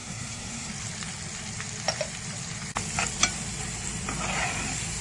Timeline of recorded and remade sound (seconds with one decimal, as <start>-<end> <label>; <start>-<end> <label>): 0.0-0.7 remade; 0.7-5.0 recorded